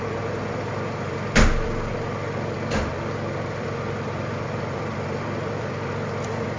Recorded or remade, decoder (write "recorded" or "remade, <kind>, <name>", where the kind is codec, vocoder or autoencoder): remade, vocoder, BigVGAN v2